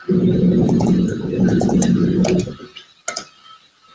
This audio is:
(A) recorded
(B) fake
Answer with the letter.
A